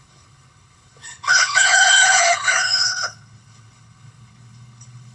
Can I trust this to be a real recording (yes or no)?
no